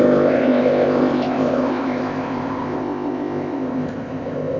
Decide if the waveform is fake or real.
fake